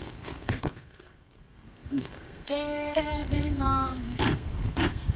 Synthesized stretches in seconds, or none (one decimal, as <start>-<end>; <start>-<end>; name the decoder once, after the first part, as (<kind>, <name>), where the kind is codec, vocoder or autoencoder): 0.0-5.2 (codec, SNAC)

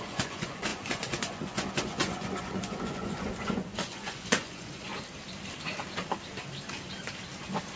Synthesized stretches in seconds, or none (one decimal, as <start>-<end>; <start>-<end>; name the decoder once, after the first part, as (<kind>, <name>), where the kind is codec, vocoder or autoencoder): 0.0-4.9 (vocoder, Vocos)

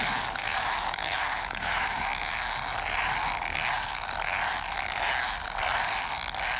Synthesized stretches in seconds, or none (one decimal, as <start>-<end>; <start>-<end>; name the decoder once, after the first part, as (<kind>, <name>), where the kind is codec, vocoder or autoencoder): 0.4-2.3 (autoencoder, DAC-VAE)

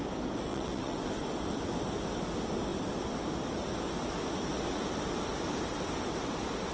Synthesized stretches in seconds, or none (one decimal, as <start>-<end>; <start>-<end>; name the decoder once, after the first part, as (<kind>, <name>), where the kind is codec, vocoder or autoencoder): 0.5-1.1 (vocoder, WaveNeXt)

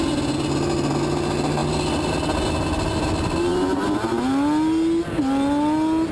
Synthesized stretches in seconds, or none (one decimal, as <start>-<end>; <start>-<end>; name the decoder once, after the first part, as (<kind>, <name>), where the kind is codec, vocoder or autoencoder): none

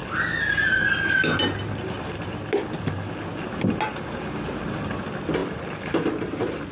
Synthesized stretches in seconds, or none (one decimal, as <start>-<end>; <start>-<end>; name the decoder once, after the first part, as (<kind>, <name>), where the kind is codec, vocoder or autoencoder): none

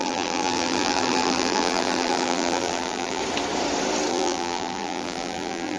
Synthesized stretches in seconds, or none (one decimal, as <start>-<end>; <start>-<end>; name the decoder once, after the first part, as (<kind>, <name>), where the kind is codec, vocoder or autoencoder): 0.0-3.2 (vocoder, BigVGAN v2); 4.1-5.8

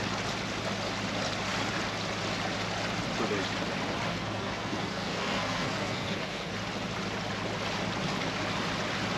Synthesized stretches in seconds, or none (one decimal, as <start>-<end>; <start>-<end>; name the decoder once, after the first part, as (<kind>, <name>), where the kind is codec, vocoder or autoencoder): 4.1-6.5 (codec, SNAC)